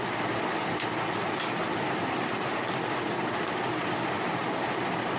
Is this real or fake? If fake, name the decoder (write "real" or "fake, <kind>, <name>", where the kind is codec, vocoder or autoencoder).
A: real